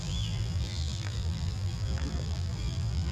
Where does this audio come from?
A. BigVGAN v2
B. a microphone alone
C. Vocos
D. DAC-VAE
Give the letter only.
A